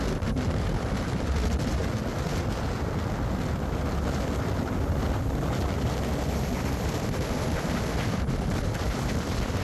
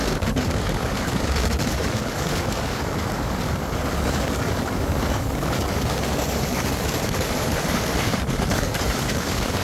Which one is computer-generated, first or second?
second